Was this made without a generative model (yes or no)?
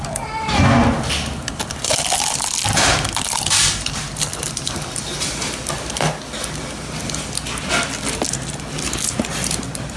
yes